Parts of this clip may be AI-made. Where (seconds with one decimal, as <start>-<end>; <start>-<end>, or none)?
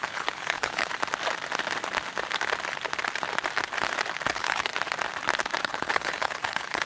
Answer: 0.0-0.9; 4.3-4.7; 5.6-6.9